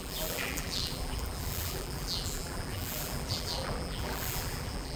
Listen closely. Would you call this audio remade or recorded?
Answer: remade